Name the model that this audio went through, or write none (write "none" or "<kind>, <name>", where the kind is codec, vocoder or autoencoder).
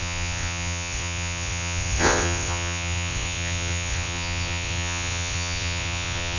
vocoder, WaveNeXt